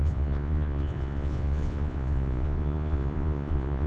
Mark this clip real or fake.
fake